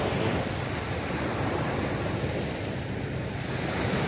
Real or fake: real